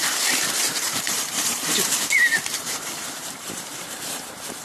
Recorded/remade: remade